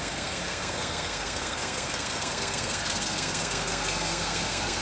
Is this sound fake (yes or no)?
yes